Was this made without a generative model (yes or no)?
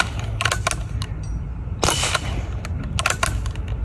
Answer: yes